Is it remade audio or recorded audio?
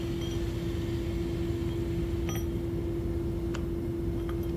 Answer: recorded